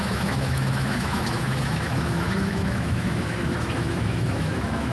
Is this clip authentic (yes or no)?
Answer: no